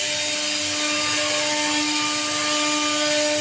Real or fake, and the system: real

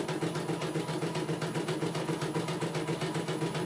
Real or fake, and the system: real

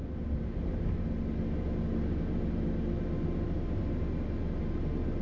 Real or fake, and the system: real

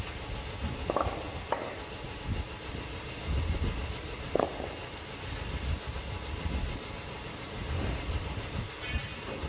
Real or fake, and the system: real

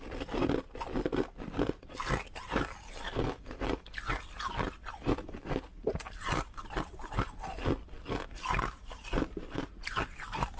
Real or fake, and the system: real